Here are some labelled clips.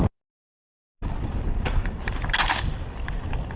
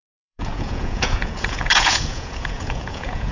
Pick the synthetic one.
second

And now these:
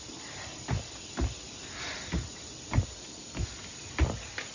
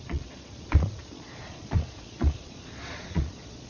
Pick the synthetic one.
second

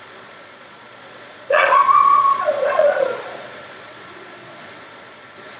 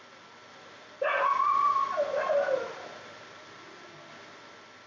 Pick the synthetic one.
first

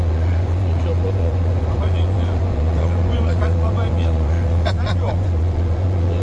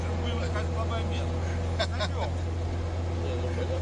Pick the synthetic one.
first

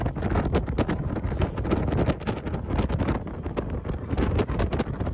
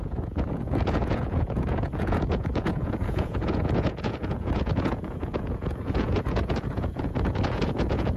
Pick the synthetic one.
second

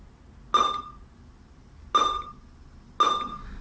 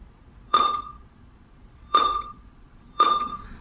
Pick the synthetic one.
second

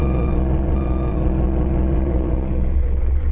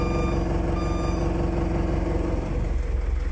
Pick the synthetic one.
first